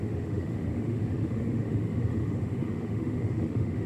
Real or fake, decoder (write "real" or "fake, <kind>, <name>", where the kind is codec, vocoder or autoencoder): fake, autoencoder, DAC-VAE